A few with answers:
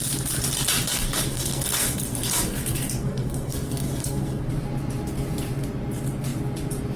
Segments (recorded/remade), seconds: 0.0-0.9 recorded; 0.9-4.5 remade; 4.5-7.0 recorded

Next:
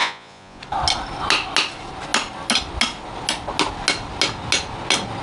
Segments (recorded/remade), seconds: 0.0-0.6 remade; 0.6-5.2 recorded

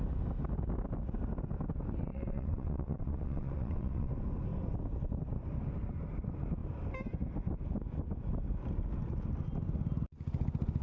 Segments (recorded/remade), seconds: 0.0-2.1 recorded; 2.1-4.1 remade; 4.1-10.8 recorded

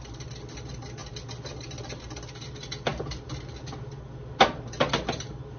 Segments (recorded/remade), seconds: 0.0-5.6 recorded

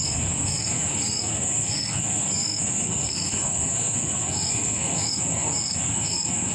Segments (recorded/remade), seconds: 0.0-6.5 remade